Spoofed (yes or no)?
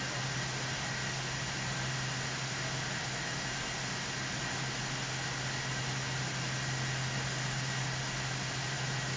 no